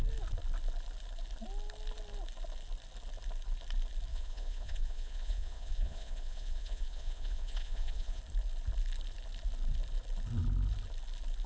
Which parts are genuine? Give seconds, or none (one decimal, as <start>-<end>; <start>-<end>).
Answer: 0.0-4.1; 8.2-11.5